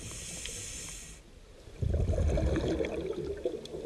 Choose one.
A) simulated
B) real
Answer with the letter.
B